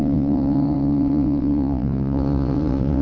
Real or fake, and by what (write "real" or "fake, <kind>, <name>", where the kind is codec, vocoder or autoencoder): fake, vocoder, WaveNeXt